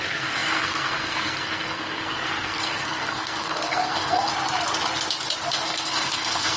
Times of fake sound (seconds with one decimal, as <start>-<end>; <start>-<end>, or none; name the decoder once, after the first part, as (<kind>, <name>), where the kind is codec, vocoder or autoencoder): 0.0-4.3 (codec, SNAC); 5.5-6.6